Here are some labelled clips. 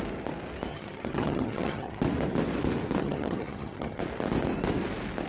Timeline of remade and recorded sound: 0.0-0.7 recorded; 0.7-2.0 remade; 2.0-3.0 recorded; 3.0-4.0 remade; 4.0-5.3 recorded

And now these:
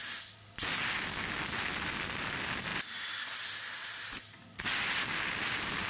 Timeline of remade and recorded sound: 0.0-5.9 recorded

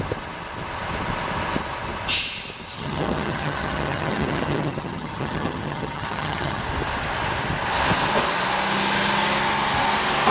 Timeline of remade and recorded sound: 0.0-2.7 recorded; 2.7-6.6 remade; 6.6-10.3 recorded

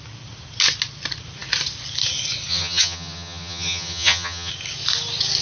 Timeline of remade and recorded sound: 0.0-2.5 recorded; 2.5-4.5 remade; 4.5-5.4 recorded